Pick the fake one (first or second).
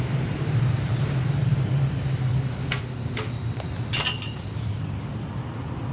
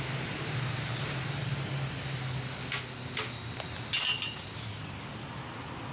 first